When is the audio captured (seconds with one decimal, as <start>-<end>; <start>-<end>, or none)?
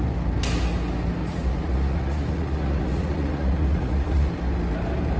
0.0-1.2; 4.3-5.2